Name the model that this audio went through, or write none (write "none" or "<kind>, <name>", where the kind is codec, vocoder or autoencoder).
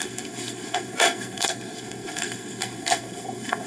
codec, SNAC